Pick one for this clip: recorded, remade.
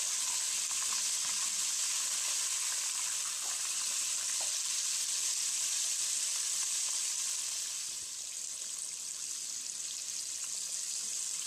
recorded